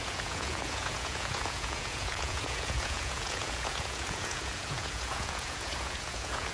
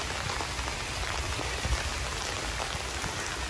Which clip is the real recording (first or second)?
second